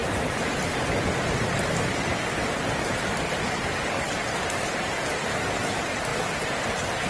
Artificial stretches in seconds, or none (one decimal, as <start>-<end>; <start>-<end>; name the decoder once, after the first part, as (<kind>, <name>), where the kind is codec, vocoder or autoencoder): 0.0-0.7 (vocoder, BigVGAN v2)